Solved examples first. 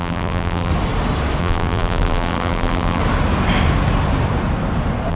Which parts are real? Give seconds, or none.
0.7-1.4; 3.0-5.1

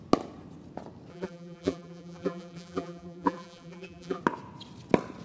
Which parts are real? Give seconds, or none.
0.0-1.1; 4.2-5.2

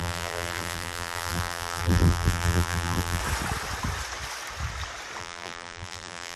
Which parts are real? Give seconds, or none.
3.2-5.2

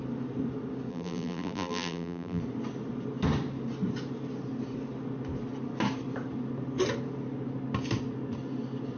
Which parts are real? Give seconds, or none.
0.0-0.9; 2.4-9.0

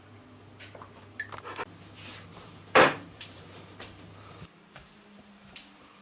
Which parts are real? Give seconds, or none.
0.0-2.3

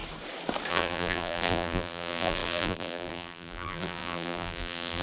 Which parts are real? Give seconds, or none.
0.0-0.7